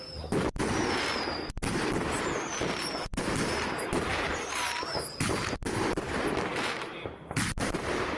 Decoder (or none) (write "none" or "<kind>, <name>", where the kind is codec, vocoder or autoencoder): none